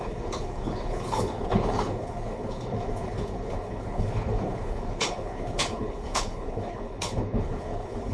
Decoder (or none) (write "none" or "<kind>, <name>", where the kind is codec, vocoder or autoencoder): codec, HILCodec